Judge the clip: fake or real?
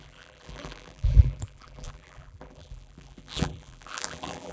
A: fake